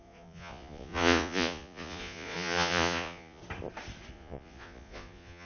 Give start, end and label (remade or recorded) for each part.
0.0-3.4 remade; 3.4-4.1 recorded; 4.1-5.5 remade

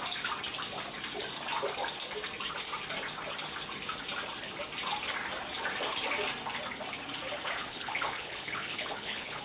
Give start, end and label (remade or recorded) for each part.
0.0-7.6 recorded; 7.6-9.4 remade

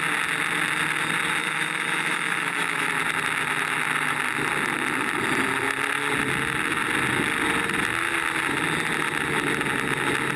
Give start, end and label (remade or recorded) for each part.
0.0-1.4 recorded; 1.4-2.9 remade; 2.9-10.4 recorded

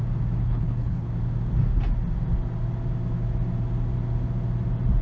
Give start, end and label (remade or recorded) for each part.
0.0-0.4 recorded; 0.4-1.1 remade; 1.1-5.0 recorded

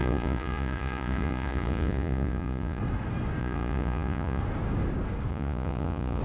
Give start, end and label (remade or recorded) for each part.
0.0-2.8 remade; 2.8-3.4 recorded; 3.4-4.4 remade; 4.4-5.3 recorded; 5.3-6.2 remade

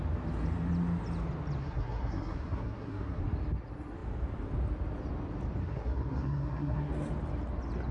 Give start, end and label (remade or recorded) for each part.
0.0-1.6 recorded; 1.6-3.2 remade; 3.2-5.6 recorded; 5.6-6.9 remade; 6.9-7.9 recorded

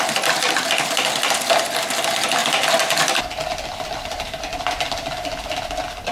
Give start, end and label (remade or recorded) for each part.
0.0-6.1 recorded

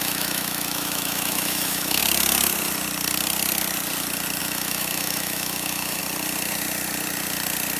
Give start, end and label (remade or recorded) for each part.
0.0-2.0 remade; 2.0-4.4 recorded; 4.4-6.0 remade; 6.0-7.8 recorded